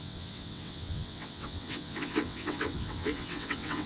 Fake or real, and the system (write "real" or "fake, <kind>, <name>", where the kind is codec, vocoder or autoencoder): fake, vocoder, WaveNeXt